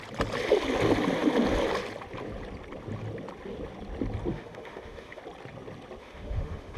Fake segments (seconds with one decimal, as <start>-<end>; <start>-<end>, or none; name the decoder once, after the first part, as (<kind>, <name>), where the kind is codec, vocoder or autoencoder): 4.3-5.2 (autoencoder, DAC-VAE); 6.0-6.8